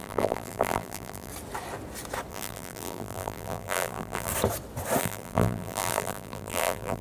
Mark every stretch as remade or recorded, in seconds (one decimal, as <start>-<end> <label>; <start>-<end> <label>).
0.0-1.3 remade; 1.3-2.3 recorded; 2.3-4.3 remade; 4.3-5.0 recorded; 5.0-7.0 remade